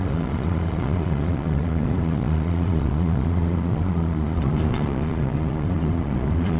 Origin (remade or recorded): remade